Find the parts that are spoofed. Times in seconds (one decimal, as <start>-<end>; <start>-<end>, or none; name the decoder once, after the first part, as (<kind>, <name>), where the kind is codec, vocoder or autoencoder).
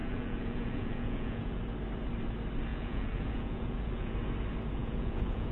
0.0-1.6 (vocoder, Vocos); 2.7-4.1; 4.8-5.5